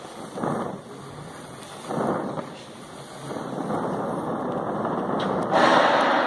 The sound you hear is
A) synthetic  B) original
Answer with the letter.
B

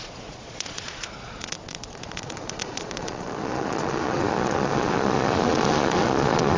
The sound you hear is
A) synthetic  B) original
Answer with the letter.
A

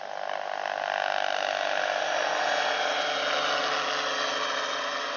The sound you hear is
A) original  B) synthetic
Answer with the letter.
A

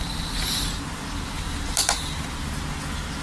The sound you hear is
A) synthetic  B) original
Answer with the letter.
B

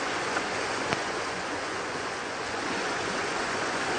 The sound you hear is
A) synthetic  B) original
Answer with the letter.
A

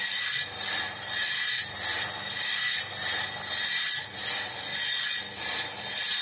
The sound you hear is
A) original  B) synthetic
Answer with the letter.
A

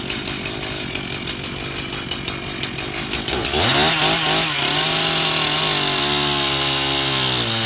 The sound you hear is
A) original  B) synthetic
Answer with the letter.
A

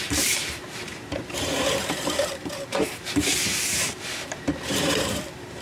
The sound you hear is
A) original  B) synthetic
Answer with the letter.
B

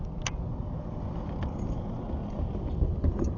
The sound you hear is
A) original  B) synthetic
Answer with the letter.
A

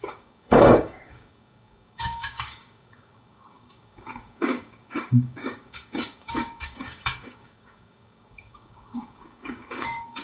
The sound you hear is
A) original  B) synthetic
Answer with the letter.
B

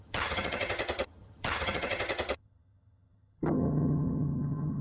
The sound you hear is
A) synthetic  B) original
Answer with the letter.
A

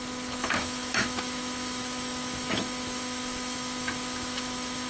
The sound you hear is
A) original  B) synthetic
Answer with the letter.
B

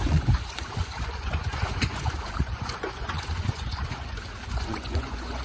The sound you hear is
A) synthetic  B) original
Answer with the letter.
A